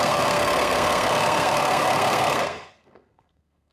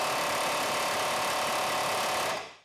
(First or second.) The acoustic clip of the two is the second